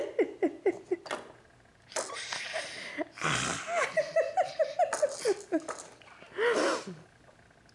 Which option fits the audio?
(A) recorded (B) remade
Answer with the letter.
A